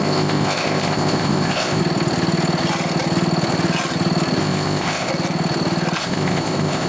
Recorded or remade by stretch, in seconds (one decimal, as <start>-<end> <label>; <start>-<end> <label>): 0.0-1.8 remade; 1.8-4.4 recorded; 4.4-5.1 remade; 5.1-6.0 recorded; 6.0-6.9 remade